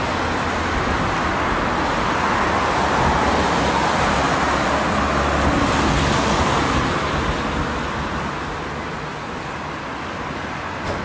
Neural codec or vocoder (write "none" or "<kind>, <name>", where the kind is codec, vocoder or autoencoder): none